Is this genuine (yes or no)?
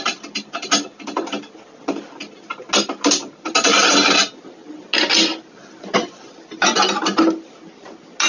yes